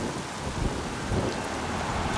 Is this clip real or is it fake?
real